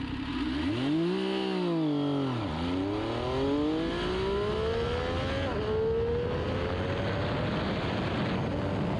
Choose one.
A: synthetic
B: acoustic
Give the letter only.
B